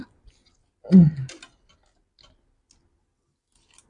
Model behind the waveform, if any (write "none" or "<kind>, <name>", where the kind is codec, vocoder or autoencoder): none